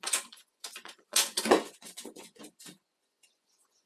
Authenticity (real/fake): fake